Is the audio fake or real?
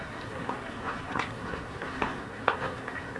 fake